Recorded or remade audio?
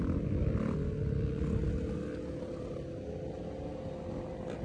recorded